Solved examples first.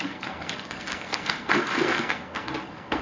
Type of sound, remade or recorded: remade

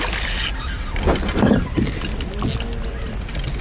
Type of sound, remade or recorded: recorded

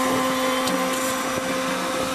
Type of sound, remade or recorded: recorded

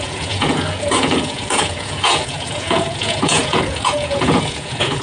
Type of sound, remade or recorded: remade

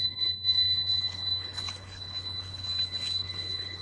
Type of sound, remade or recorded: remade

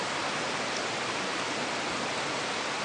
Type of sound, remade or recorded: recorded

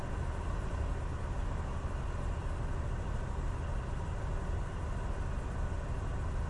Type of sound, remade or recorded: recorded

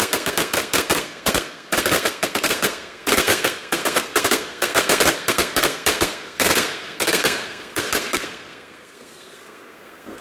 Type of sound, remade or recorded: remade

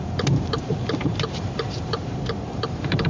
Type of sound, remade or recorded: remade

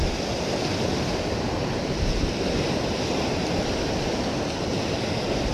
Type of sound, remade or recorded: recorded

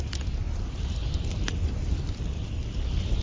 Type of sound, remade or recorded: recorded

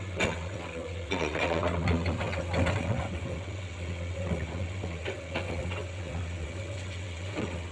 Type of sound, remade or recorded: remade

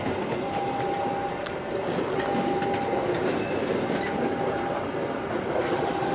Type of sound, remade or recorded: recorded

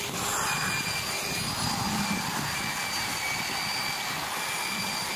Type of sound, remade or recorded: recorded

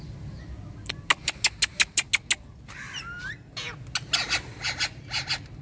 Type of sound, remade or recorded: recorded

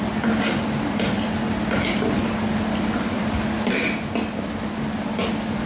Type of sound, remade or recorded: recorded